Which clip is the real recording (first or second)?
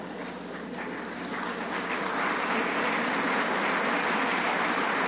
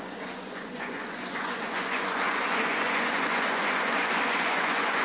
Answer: first